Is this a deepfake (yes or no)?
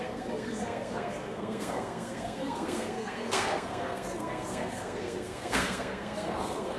yes